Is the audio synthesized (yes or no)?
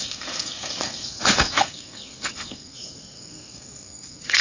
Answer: yes